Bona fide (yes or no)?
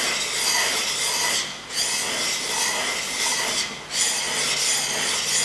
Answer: yes